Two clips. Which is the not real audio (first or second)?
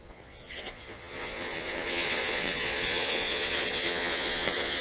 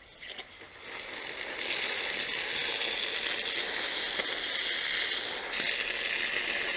first